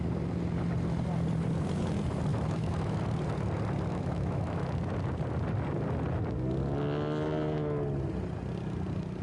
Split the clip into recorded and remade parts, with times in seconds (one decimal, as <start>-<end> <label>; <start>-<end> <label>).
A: 0.0-2.3 recorded; 2.3-3.0 remade; 3.0-3.9 recorded; 3.9-4.6 remade; 4.6-9.2 recorded